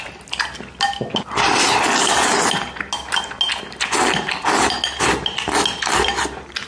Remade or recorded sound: recorded